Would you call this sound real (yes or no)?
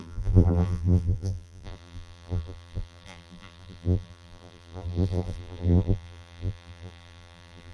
no